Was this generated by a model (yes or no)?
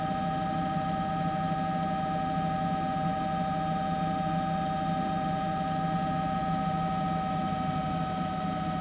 no